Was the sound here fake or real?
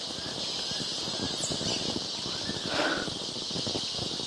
real